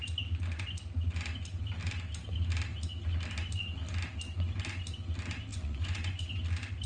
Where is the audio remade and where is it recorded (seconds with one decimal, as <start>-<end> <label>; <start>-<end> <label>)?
0.0-5.5 recorded; 5.5-6.2 remade; 6.2-6.9 recorded